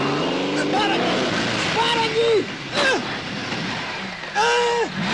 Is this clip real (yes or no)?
yes